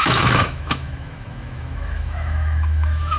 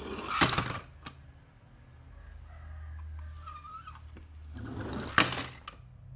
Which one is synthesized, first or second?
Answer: first